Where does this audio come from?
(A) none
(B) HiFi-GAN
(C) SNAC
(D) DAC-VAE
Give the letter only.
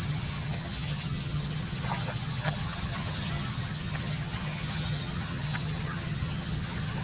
B